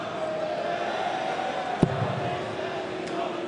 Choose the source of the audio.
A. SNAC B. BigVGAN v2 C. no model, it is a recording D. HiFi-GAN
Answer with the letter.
C